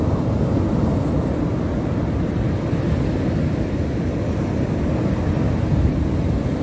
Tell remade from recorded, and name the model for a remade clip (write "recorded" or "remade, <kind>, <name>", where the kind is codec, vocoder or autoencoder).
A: recorded